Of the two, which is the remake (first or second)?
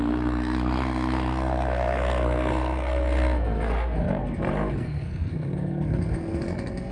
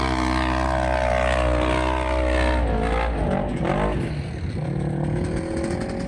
first